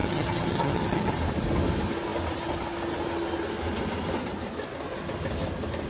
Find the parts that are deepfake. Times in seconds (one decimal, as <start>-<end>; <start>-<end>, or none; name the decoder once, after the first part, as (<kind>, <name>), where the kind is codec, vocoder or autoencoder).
0.0-1.1 (vocoder, HiFi-GAN)